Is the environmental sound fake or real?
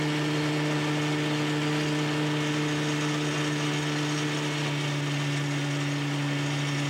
real